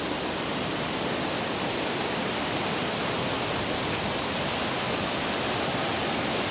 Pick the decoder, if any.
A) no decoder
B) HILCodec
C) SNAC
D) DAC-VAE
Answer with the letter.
A